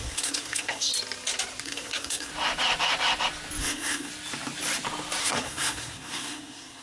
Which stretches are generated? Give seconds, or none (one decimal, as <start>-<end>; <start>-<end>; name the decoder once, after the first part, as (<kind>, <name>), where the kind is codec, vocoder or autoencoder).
0.0-0.9 (codec, SNAC); 1.6-2.3; 3.6-4.1; 5.2-6.8